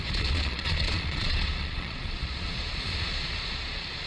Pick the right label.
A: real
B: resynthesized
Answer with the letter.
B